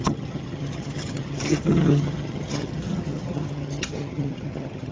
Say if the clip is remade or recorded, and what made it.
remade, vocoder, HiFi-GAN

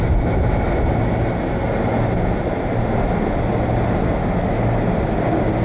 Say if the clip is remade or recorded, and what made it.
recorded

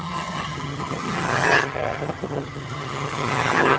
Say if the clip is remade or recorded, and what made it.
remade, vocoder, HiFi-GAN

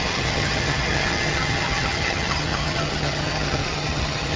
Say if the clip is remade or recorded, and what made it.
remade, vocoder, HiFi-GAN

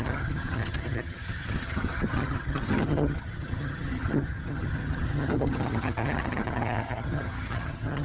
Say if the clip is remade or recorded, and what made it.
remade, vocoder, HiFi-GAN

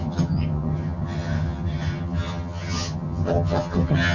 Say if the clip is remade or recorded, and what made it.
remade, vocoder, HiFi-GAN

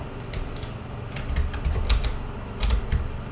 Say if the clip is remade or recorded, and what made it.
recorded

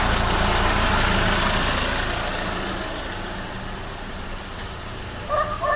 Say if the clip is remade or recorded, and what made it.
recorded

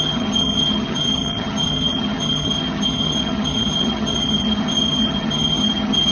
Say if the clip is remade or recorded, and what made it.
remade, vocoder, HiFi-GAN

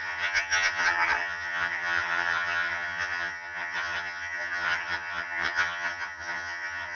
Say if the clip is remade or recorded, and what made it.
remade, vocoder, HiFi-GAN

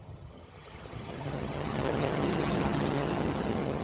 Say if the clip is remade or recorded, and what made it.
remade, vocoder, HiFi-GAN